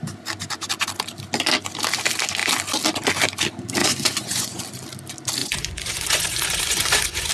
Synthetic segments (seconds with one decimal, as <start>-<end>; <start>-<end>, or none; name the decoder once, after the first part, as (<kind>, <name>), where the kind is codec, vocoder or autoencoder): 3.8-4.6 (vocoder, Vocos); 5.4-7.3